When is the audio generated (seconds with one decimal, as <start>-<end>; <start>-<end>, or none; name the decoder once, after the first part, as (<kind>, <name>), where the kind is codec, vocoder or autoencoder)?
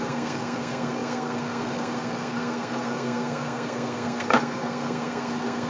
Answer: 0.0-5.7 (codec, SNAC)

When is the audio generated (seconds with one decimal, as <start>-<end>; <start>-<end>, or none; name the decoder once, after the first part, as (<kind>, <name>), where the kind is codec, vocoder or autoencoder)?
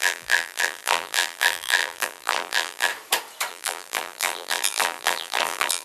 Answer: 0.0-2.9 (vocoder, BigVGAN v2); 3.5-5.8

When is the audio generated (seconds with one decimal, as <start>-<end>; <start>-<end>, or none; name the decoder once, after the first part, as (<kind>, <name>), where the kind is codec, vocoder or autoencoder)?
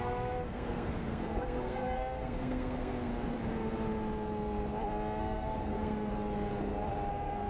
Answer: 0.0-3.1 (codec, SNAC); 5.2-6.1; 7.1-7.5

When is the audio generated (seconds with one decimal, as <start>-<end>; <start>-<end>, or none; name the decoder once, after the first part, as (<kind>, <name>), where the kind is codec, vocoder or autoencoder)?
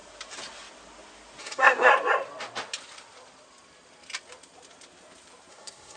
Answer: 1.4-1.9 (codec, SNAC); 5.5-6.0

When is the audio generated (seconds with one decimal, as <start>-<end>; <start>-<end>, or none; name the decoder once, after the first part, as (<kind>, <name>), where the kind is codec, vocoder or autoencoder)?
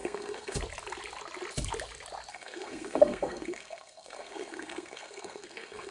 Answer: 0.0-0.6 (codec, SNAC); 2.3-5.9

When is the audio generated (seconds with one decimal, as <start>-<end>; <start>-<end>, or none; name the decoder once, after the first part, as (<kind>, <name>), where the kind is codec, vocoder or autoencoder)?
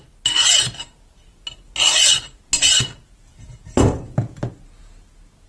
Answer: none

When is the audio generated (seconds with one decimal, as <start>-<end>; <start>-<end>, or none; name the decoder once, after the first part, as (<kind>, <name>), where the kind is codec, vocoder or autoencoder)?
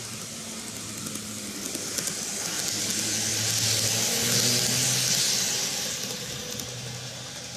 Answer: none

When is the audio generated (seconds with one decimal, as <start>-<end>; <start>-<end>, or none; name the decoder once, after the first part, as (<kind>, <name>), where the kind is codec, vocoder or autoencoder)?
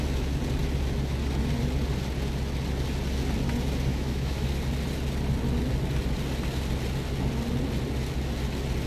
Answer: 3.9-4.5 (autoencoder, DAC-VAE)